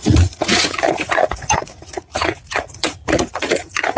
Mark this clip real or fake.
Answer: fake